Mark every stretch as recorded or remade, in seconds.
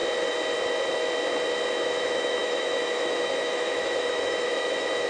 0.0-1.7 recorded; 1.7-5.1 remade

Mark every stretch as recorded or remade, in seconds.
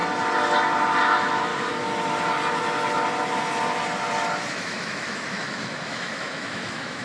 0.0-1.0 recorded; 1.0-1.5 remade; 1.5-4.5 recorded; 4.5-7.0 remade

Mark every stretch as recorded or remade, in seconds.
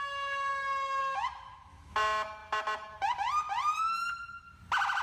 0.0-1.0 recorded; 1.0-1.9 remade; 1.9-5.0 recorded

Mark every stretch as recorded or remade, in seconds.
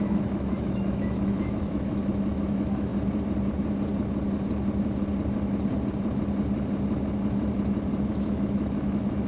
0.0-2.9 remade; 2.9-8.1 recorded; 8.1-9.3 remade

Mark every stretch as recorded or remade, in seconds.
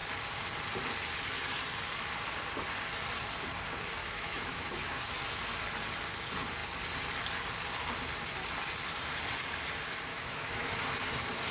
0.0-4.0 recorded; 4.0-5.0 remade; 5.0-10.1 recorded; 10.1-10.9 remade; 10.9-11.5 recorded